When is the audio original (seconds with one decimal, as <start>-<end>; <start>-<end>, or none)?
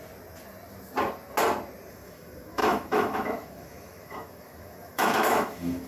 0.0-1.9